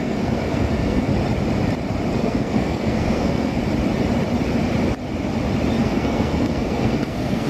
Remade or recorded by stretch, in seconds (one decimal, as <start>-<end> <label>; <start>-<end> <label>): 0.0-1.1 remade; 1.1-2.1 recorded; 2.1-3.6 remade; 3.6-5.8 recorded; 5.8-7.5 remade